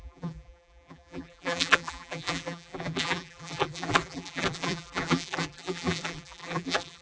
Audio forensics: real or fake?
fake